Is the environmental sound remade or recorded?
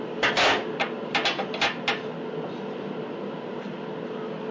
recorded